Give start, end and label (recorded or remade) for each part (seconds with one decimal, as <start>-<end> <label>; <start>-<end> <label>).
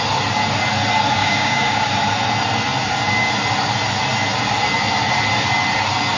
0.0-1.2 recorded; 1.2-1.9 remade; 1.9-6.2 recorded